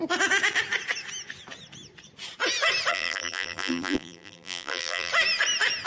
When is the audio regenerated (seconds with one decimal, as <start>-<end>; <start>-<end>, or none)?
2.9-5.1